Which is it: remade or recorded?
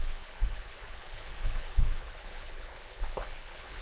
remade